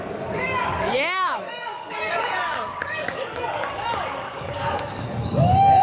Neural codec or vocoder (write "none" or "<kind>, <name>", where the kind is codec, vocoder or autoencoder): codec, DAC